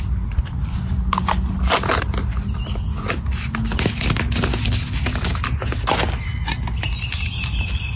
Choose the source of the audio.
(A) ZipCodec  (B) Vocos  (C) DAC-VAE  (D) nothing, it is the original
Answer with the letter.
D